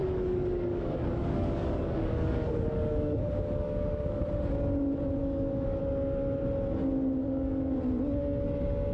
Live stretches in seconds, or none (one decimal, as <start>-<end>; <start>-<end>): 4.2-5.2; 5.8-7.2; 7.8-8.9